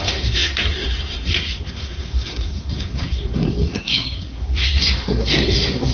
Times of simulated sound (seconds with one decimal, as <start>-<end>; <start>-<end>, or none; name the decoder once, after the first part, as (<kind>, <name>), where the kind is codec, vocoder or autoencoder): 0.0-5.9 (codec, SNAC)